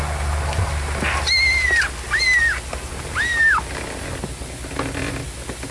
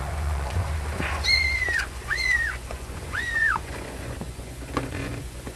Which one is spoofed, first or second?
second